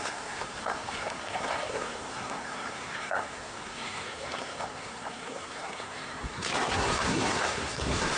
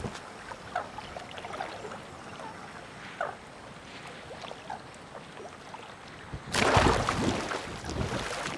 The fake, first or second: first